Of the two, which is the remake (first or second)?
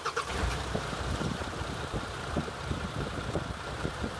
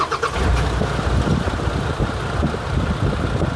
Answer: first